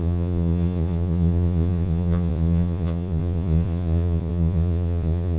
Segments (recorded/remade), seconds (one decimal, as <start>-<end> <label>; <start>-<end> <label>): 0.0-5.4 remade